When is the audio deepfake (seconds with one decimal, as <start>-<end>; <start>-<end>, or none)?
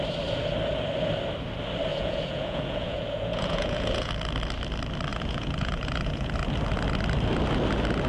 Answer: 1.9-4.1; 5.1-6.3